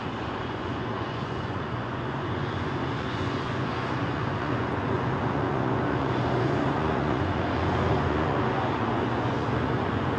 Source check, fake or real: fake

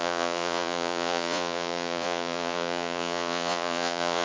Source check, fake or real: fake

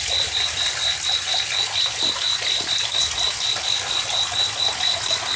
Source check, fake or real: real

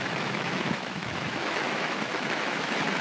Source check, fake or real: fake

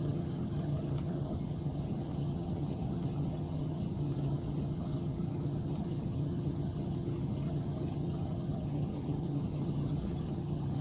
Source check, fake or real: fake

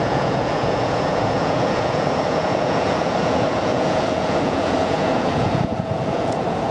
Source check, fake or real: fake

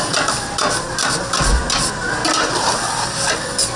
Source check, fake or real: real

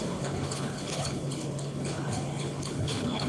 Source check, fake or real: fake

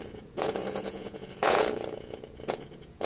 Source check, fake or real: fake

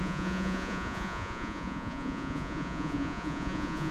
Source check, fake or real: fake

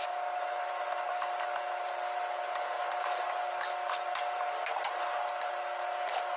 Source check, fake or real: real